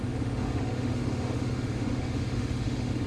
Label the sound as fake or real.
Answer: fake